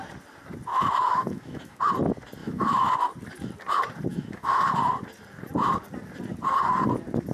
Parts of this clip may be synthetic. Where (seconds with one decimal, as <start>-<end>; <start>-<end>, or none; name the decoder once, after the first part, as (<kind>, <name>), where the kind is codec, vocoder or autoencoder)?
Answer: 0.7-1.8 (autoencoder, DAC-VAE); 2.4-2.9; 4.1-4.7